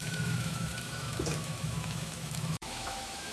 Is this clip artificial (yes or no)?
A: yes